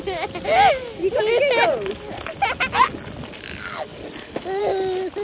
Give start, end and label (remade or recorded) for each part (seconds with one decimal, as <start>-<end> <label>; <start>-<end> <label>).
0.0-5.2 recorded